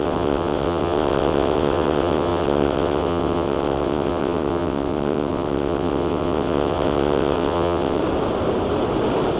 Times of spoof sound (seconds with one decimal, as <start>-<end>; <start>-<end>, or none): 0.0-8.0